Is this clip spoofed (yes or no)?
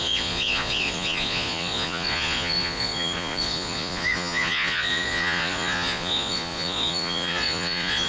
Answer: yes